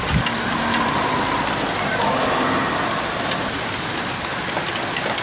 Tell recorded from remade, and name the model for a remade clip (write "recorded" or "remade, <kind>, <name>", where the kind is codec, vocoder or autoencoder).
recorded